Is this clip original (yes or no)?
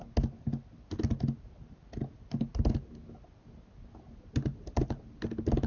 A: yes